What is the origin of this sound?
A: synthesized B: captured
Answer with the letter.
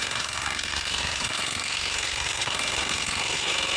A